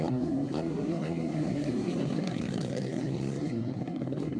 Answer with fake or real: fake